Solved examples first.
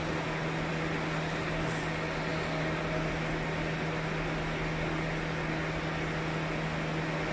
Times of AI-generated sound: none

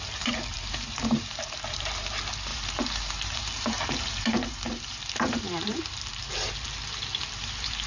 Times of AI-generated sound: 0.0-7.9 (vocoder, BigVGAN v2)

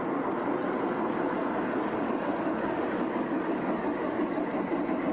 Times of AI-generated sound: 1.4-4.5 (codec, DAC)

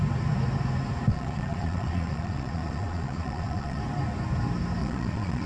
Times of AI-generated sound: 1.1-3.8 (vocoder, Vocos); 4.8-5.5